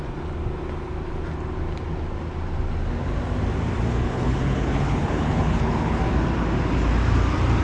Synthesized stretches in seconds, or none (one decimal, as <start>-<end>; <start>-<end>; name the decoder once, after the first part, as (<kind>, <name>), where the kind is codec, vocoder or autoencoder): 3.9-6.0 (codec, HILCodec)